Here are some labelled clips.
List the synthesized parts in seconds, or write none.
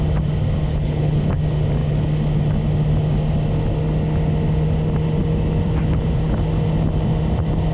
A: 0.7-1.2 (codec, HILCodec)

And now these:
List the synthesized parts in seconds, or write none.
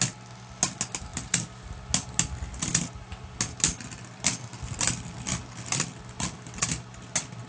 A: none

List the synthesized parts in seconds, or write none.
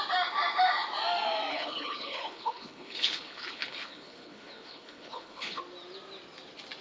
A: 1.5-5.6 (codec, HILCodec)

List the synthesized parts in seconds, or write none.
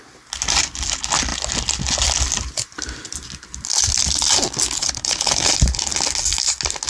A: 4.8-5.5 (codec, HILCodec)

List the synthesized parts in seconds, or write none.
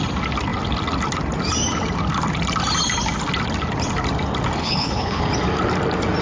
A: 4.6-5.2 (codec, HILCodec)